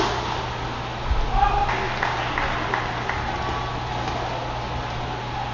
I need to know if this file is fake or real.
real